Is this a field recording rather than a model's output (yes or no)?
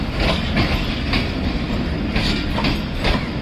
yes